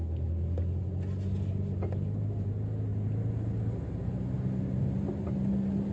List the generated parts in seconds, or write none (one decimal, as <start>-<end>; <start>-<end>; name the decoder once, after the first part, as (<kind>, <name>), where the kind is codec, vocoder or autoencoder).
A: none